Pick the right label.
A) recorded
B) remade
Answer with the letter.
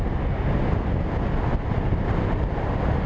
A